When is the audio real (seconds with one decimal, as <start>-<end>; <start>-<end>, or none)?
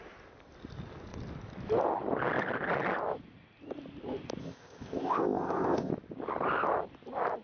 0.0-4.4; 5.9-7.4